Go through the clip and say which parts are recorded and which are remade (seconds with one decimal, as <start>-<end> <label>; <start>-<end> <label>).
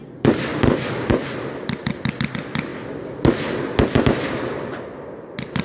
0.0-5.6 recorded